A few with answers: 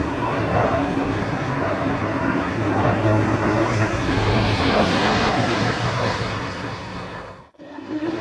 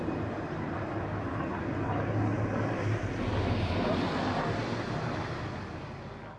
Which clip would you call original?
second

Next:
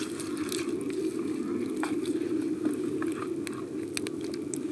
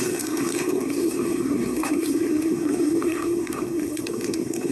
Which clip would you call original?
first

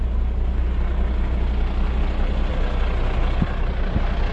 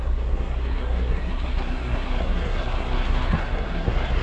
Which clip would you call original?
first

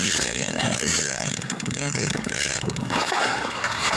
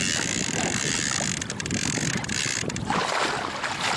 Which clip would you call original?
second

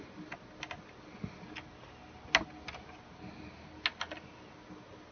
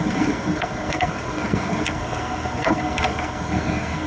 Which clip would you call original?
first